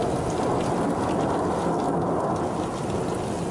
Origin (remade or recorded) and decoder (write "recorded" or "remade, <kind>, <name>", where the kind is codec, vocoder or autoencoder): recorded